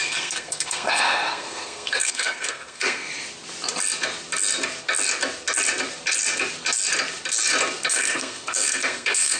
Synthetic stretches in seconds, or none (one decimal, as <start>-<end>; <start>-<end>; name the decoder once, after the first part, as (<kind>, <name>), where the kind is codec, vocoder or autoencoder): 0.0-3.1 (codec, SNAC); 7.9-9.4